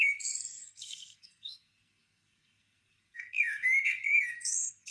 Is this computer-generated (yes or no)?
yes